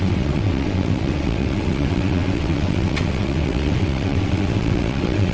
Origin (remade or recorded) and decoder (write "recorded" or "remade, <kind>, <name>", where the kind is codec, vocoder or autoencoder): remade, vocoder, WaveNeXt